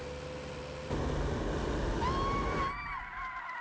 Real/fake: real